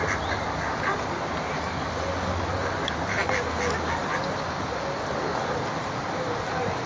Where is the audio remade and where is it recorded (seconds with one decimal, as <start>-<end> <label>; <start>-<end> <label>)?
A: 0.0-6.9 recorded

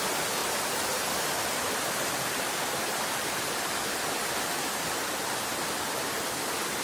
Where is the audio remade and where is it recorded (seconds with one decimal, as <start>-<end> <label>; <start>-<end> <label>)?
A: 0.0-0.4 recorded; 0.4-3.5 remade; 3.5-6.8 recorded

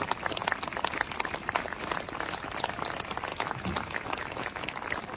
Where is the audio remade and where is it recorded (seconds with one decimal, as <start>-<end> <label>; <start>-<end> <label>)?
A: 0.0-3.3 recorded; 3.3-4.7 remade; 4.7-5.2 recorded